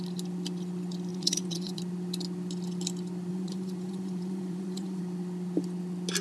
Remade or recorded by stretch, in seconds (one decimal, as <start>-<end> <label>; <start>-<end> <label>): 0.0-1.1 recorded; 1.1-1.8 remade; 1.8-3.3 recorded; 3.3-5.0 remade; 5.0-6.2 recorded